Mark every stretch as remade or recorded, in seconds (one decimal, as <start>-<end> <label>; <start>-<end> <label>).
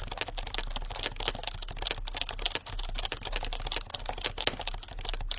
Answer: 0.0-5.4 recorded